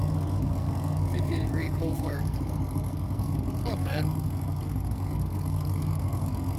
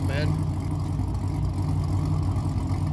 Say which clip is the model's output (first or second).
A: first